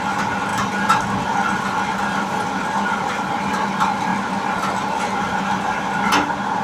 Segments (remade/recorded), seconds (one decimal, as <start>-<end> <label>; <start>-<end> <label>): 0.0-6.6 recorded